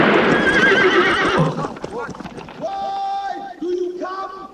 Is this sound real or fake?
real